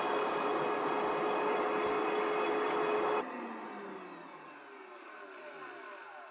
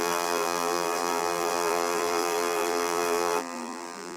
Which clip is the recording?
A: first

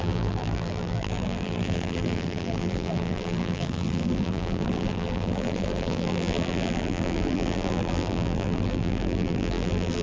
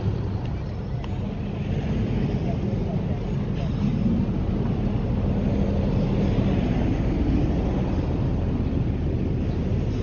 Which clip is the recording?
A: second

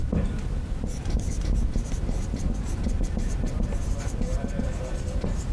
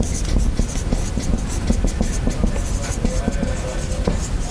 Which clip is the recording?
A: second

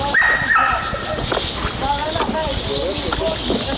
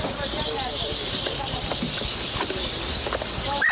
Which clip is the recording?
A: first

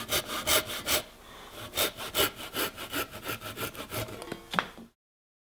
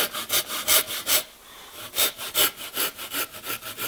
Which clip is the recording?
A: first